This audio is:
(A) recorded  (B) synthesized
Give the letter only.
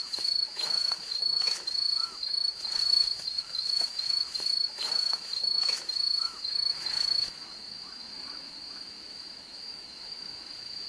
B